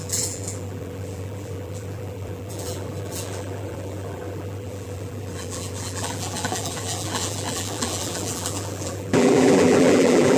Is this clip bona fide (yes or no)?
no